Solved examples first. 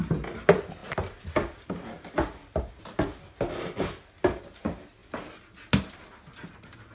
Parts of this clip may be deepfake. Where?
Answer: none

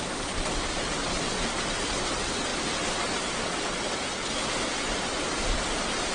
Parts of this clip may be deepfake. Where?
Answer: none

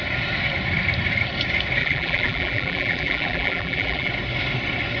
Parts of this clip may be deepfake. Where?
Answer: 1.8-4.1 (vocoder, BigVGAN v2)

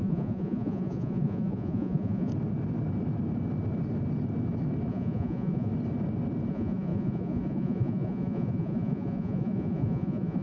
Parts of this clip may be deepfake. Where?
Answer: 0.0-2.3 (vocoder, Vocos); 4.9-5.7; 6.5-10.4

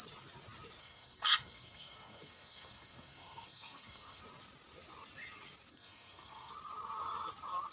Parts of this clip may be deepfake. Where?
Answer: 0.8-4.2 (codec, SNAC); 5.7-6.5